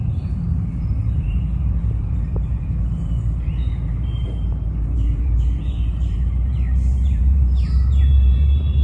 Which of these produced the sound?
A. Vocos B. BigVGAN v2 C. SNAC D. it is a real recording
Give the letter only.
B